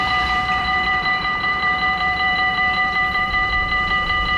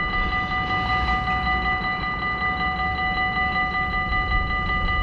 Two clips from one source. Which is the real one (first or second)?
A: second